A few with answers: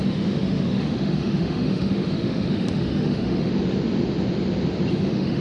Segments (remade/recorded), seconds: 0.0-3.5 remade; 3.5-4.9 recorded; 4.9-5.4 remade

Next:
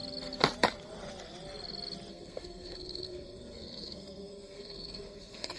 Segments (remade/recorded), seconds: 0.0-2.1 recorded; 2.1-5.6 remade

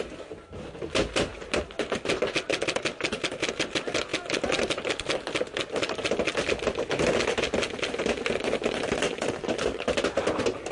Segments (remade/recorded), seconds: 0.0-10.7 recorded

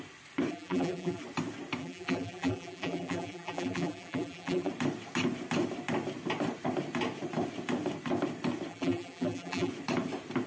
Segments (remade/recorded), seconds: 0.0-0.5 recorded; 0.5-1.2 remade; 1.2-1.8 recorded; 1.8-4.7 remade; 4.7-8.7 recorded; 8.7-9.7 remade; 9.7-10.5 recorded

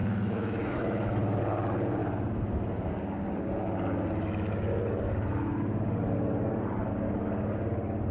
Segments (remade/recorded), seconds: 0.0-1.4 remade; 1.4-8.1 recorded

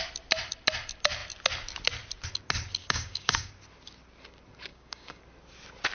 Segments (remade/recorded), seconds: 0.0-2.8 recorded; 2.8-3.5 remade; 3.5-4.7 recorded; 4.7-5.2 remade; 5.2-5.9 recorded

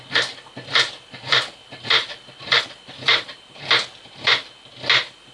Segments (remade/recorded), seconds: 0.0-1.6 recorded; 1.6-2.6 remade; 2.6-3.1 recorded; 3.1-4.7 remade; 4.7-5.3 recorded